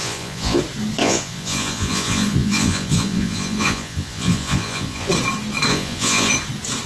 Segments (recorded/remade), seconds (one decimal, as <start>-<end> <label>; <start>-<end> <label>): 0.0-0.6 remade; 0.6-1.0 recorded; 1.0-5.1 remade; 5.1-5.7 recorded; 5.7-6.3 remade; 6.3-6.9 recorded